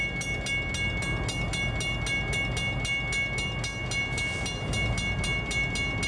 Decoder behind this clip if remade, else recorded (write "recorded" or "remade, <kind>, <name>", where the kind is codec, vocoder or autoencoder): recorded